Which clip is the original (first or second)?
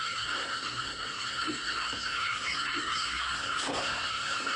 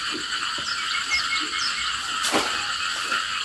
second